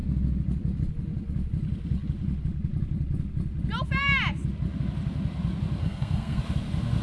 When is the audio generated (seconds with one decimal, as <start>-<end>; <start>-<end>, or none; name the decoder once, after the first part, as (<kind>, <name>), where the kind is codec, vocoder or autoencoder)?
5.8-6.4 (codec, SNAC)